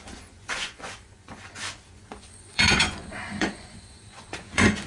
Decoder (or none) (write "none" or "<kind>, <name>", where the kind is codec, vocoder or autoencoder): vocoder, Vocos